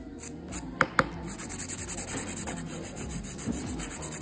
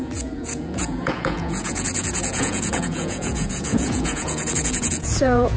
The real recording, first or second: first